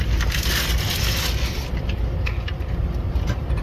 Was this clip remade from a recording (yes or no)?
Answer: yes